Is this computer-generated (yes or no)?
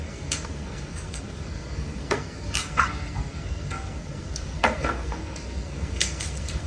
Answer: yes